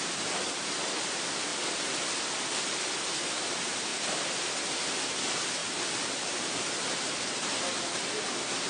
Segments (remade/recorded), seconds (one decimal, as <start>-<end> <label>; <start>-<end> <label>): 0.0-5.6 recorded; 5.6-7.6 remade; 7.6-8.7 recorded